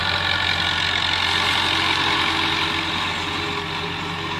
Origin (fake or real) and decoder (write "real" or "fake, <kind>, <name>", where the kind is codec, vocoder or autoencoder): real